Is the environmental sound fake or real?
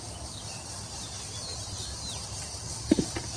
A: real